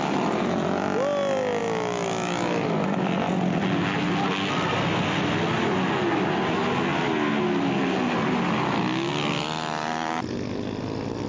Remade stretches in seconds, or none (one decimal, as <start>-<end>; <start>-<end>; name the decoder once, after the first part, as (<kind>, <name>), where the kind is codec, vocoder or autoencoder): none